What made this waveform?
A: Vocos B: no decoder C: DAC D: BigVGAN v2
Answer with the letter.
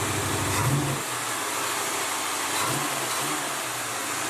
B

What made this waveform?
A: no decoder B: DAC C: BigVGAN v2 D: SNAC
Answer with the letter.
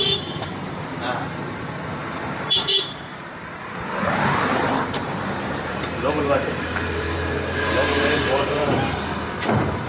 C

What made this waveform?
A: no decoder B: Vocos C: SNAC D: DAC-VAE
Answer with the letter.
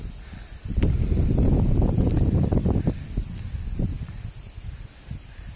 A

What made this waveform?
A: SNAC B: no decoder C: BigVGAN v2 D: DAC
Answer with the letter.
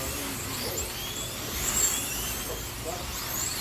B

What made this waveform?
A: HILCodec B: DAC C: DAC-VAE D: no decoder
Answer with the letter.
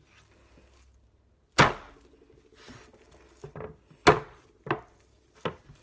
D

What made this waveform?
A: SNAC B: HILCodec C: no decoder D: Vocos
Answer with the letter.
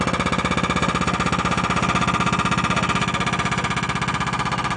C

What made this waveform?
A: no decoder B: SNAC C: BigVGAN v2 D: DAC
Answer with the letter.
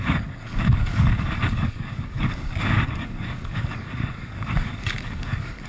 D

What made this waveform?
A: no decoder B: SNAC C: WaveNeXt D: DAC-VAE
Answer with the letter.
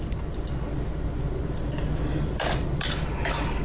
A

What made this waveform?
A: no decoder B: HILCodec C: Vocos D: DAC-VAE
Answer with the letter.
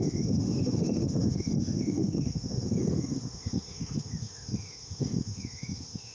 D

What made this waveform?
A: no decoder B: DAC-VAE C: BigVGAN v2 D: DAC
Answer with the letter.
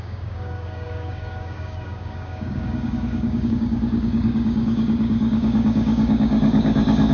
D